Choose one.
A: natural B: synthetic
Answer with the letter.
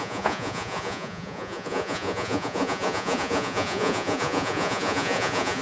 B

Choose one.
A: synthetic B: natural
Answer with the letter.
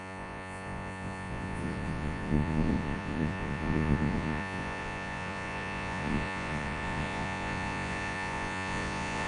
A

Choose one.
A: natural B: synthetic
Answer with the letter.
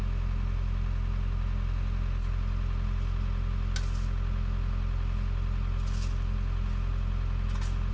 A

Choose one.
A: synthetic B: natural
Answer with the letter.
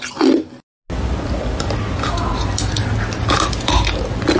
B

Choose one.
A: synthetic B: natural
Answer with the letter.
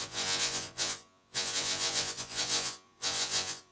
A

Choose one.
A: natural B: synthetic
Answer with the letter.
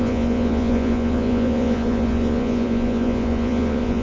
B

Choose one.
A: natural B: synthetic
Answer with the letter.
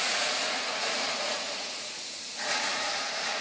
B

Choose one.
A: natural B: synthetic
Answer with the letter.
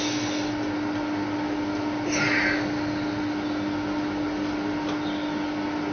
A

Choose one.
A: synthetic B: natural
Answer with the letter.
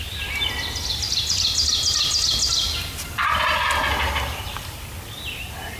B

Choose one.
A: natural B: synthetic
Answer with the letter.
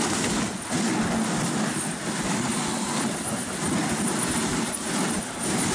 A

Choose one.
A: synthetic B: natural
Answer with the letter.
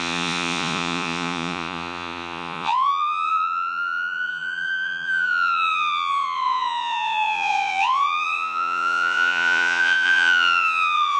A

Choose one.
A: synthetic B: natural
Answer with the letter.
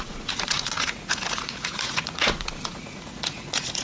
A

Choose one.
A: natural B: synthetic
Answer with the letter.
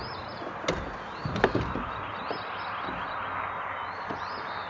A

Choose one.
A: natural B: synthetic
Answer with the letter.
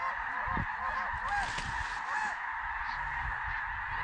A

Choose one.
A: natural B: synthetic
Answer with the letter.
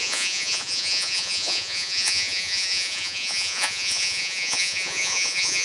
B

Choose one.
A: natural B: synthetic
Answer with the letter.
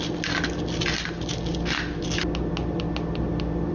A